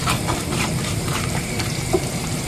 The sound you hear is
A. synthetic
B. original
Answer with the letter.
A